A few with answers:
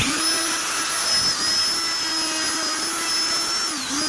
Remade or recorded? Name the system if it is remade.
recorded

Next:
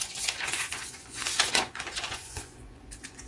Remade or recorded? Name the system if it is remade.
remade, vocoder, Vocos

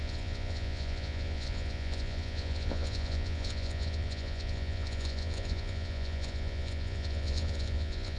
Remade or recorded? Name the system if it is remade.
remade, vocoder, Vocos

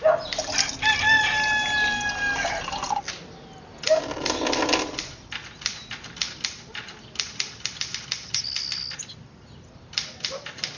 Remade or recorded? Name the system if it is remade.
recorded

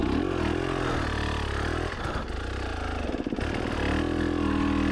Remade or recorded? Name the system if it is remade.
recorded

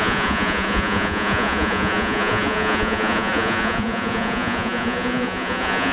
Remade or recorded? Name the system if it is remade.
remade, vocoder, Vocos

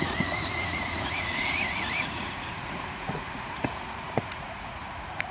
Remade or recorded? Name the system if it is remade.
remade, vocoder, Vocos